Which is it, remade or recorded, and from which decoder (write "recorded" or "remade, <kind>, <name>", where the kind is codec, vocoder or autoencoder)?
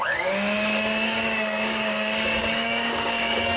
remade, codec, DAC